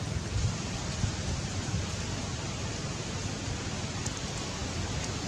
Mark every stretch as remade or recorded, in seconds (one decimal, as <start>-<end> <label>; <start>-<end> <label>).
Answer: 0.0-5.3 recorded